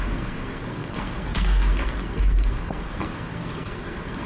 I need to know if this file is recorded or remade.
remade